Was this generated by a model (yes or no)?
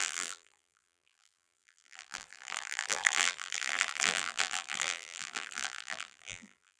yes